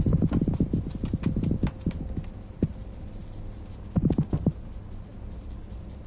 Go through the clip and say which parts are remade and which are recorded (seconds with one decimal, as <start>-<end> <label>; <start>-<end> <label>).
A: 0.0-6.1 recorded